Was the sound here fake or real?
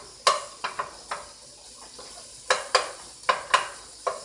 real